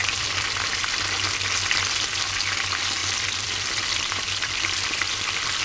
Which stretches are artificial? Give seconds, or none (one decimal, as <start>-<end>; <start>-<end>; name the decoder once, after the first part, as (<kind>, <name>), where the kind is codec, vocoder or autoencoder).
0.0-0.8 (vocoder, BigVGAN v2); 3.0-5.6